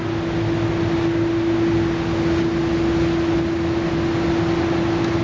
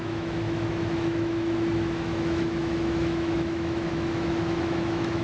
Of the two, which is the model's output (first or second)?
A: second